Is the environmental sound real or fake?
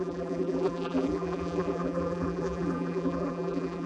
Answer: fake